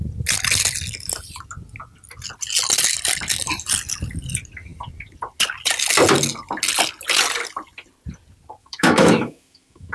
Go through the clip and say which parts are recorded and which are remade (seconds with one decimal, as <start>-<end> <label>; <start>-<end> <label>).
0.0-8.6 recorded; 8.6-9.9 remade